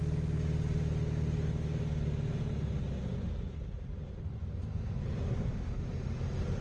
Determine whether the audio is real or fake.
real